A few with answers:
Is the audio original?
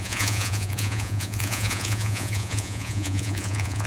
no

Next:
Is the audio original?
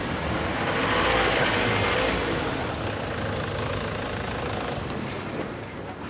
yes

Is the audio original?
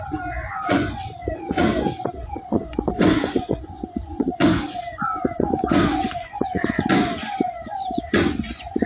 no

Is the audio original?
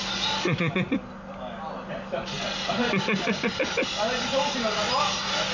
yes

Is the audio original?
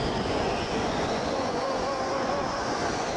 no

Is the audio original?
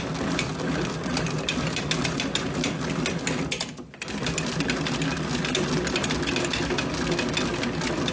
yes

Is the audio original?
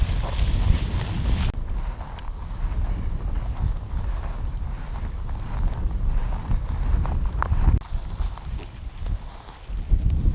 yes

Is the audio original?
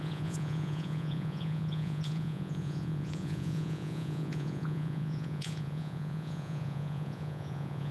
no